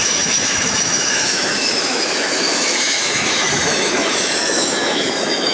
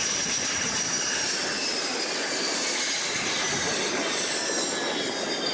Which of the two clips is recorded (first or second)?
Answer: second